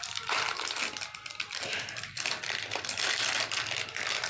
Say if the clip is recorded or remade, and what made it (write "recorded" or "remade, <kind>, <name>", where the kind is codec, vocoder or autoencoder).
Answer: recorded